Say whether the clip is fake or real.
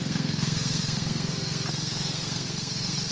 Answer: fake